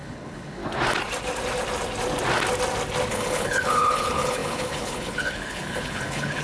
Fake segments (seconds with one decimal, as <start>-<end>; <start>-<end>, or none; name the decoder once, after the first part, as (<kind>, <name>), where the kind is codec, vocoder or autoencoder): 0.0-0.6 (codec, HILCodec); 3.1-6.4